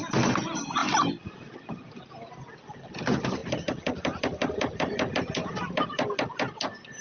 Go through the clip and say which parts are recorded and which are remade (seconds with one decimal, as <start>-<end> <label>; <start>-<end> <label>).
0.0-0.8 recorded; 0.8-2.0 remade; 2.0-3.4 recorded; 3.4-5.1 remade; 5.1-7.0 recorded